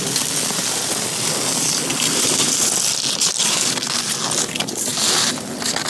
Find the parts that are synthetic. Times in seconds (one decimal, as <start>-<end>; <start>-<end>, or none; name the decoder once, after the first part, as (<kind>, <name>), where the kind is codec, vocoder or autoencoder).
none